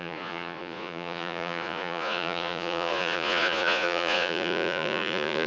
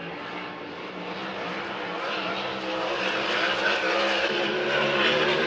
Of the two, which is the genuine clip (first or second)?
second